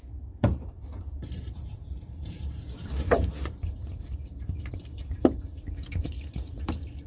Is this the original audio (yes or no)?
no